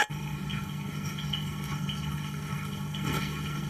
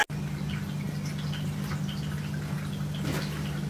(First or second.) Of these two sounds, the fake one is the first